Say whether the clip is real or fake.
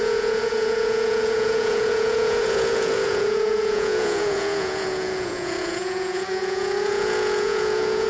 fake